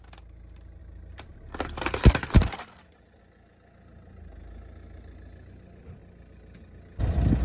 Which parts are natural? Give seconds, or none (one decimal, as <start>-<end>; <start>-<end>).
0.0-0.8; 3.2-7.4

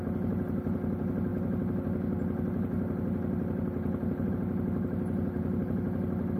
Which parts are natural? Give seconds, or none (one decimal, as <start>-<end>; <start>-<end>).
0.0-6.4